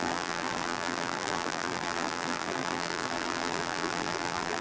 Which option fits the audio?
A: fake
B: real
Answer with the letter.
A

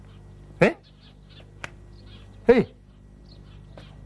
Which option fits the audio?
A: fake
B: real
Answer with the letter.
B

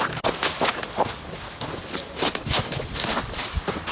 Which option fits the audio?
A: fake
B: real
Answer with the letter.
B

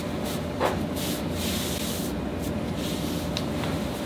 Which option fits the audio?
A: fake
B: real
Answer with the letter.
B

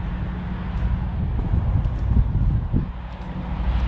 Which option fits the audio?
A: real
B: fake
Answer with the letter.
A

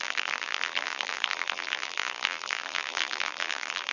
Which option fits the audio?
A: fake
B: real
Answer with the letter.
A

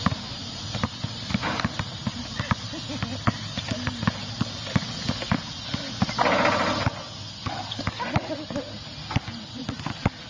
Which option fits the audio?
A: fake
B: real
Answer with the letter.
B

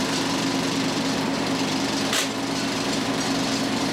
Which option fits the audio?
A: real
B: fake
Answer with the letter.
B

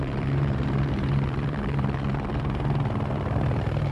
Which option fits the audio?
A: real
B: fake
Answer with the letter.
B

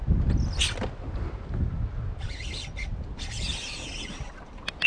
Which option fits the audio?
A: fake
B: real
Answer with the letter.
B